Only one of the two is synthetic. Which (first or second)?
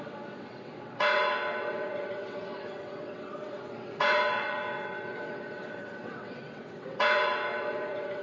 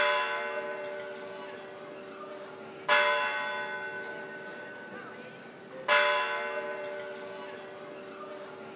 first